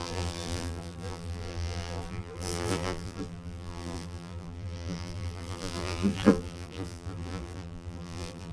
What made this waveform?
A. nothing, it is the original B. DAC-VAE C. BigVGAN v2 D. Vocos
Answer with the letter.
C